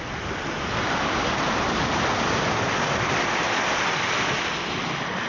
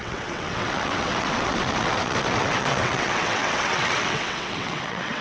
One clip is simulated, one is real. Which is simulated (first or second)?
second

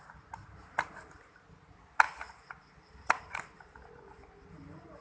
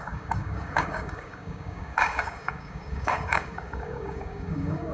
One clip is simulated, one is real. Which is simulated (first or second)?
second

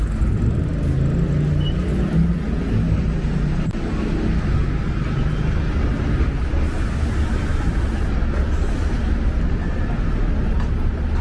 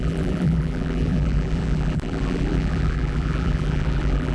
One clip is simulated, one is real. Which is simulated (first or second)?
second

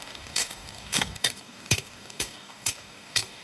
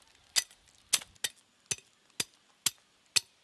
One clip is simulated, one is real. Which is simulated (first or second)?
first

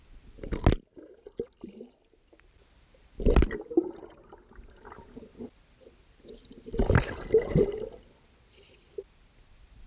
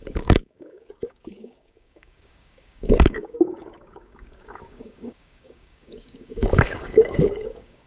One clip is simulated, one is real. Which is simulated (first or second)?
second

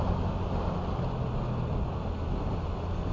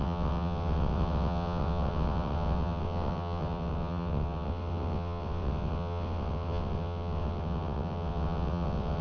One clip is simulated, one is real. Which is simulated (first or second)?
second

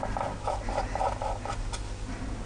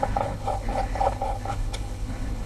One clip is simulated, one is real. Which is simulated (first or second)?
second